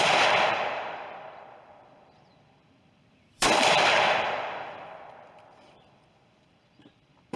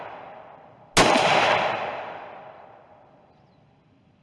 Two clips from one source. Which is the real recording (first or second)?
second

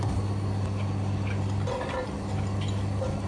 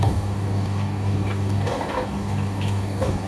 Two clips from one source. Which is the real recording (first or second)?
first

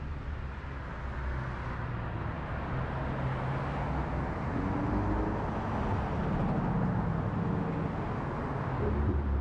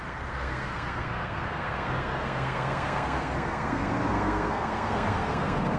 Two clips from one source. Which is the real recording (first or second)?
first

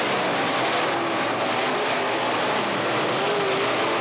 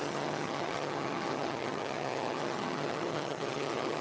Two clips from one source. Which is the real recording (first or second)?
first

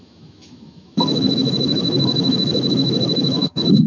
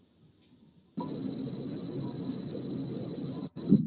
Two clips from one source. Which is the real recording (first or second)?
second